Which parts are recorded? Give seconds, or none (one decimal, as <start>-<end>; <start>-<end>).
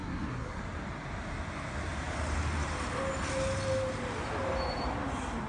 0.6-5.5